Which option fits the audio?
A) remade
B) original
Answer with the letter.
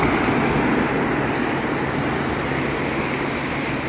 B